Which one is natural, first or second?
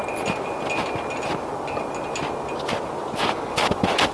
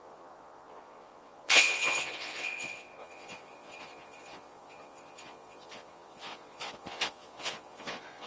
first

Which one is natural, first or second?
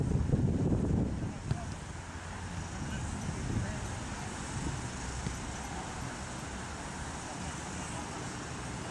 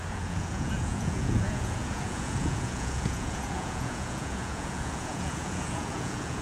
first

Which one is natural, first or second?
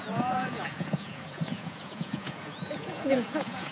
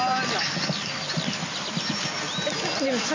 second